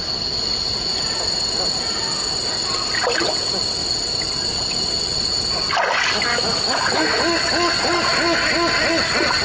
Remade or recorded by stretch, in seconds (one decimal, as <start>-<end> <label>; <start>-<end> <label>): 0.0-6.3 recorded; 6.3-7.2 remade; 7.2-9.4 recorded